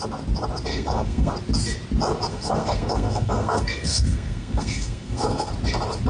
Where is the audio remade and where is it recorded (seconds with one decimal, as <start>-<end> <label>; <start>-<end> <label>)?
0.0-0.7 recorded; 0.7-1.3 remade; 1.3-2.3 recorded; 2.3-5.5 remade; 5.5-6.1 recorded

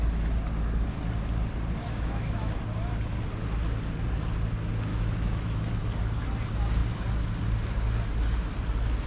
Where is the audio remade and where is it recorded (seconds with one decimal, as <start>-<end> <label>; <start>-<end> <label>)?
0.0-1.8 recorded; 1.8-2.5 remade; 2.5-4.9 recorded; 4.9-5.7 remade; 5.7-9.1 recorded

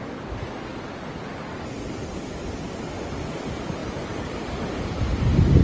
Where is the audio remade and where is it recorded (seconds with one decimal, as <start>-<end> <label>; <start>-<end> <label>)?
0.0-5.6 recorded

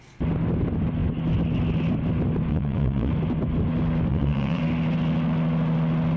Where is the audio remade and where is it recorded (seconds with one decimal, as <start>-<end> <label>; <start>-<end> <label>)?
0.0-2.5 recorded; 2.5-3.1 remade; 3.1-4.1 recorded; 4.1-4.6 remade; 4.6-6.2 recorded

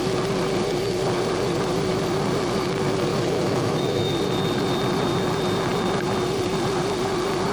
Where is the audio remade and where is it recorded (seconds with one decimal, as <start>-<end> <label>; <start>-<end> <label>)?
0.0-3.1 recorded; 3.1-4.1 remade; 4.1-7.5 recorded